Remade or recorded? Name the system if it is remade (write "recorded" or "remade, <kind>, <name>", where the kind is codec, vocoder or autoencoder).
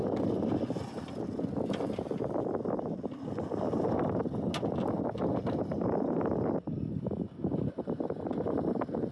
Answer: recorded